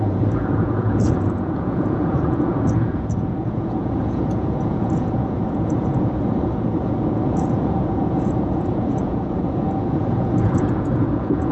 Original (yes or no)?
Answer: no